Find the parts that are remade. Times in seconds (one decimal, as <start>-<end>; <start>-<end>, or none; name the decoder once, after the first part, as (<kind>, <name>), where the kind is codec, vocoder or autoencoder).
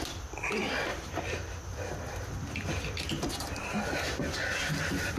none